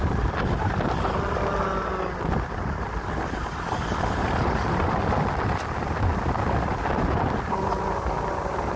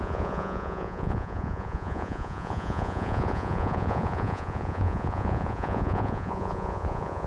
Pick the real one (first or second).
first